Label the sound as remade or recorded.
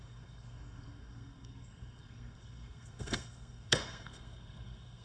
remade